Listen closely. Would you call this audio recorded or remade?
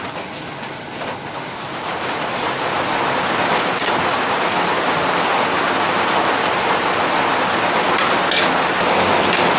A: recorded